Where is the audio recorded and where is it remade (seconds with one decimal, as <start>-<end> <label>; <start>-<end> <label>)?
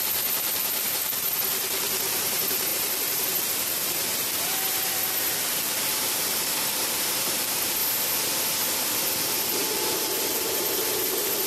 0.0-7.8 remade; 7.8-8.8 recorded; 8.8-11.5 remade